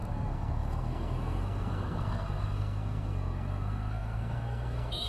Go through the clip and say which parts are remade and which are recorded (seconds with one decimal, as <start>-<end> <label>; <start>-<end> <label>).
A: 0.0-5.1 remade